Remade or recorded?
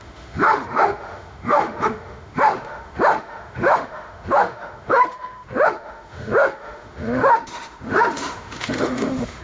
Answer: remade